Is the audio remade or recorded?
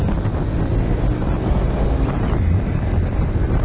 recorded